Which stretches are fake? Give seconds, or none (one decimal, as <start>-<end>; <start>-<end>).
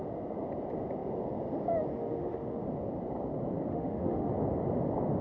1.9-2.6; 3.7-4.3